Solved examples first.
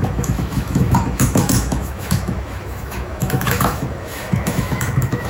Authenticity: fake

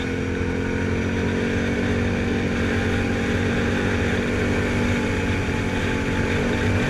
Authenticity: real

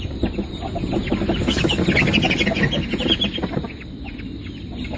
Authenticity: real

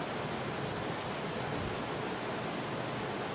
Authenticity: real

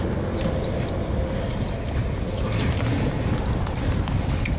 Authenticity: real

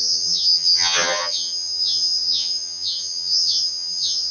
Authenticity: fake